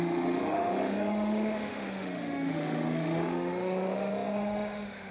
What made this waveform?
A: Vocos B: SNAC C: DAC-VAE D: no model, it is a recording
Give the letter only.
C